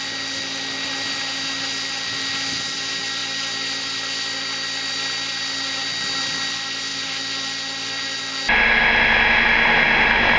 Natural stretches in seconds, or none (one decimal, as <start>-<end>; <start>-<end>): 0.0-10.4